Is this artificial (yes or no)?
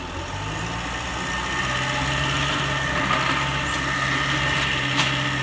no